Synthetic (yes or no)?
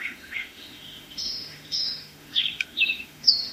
yes